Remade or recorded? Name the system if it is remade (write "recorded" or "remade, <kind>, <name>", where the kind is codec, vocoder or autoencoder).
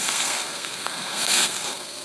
remade, codec, SNAC